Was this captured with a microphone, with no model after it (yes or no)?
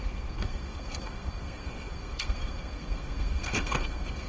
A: no